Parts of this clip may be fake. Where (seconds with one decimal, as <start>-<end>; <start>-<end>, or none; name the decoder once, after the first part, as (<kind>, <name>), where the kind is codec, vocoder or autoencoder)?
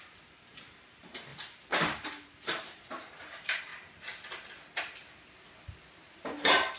0.0-3.7 (vocoder, BigVGAN v2); 6.2-6.8